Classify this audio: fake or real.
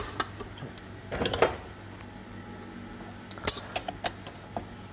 real